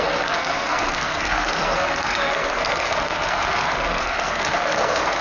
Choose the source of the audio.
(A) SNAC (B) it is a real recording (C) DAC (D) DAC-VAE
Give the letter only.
A